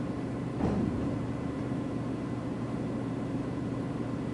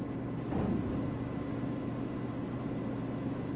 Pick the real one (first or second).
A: second